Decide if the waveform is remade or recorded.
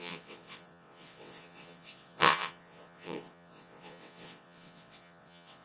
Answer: remade